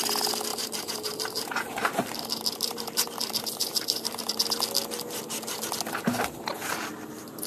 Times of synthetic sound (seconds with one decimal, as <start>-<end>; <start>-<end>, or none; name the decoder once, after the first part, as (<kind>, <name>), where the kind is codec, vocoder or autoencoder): 0.5-4.3 (vocoder, BigVGAN v2)